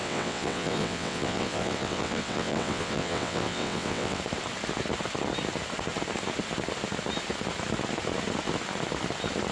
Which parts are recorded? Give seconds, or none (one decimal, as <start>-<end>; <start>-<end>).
4.2-9.5